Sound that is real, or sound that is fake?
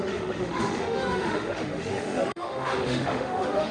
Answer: fake